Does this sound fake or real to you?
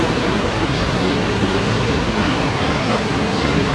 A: fake